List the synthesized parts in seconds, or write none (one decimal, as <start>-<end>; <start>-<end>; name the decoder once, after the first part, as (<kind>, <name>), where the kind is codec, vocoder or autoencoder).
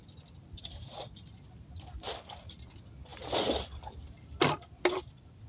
3.1-4.8 (vocoder, BigVGAN v2)